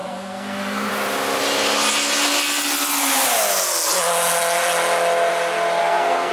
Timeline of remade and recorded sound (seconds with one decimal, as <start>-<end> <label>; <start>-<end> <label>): 0.0-0.9 remade; 0.9-5.8 recorded; 5.8-6.3 remade